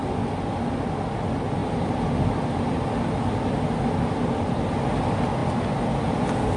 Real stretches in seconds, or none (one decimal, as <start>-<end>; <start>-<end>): 0.0-6.6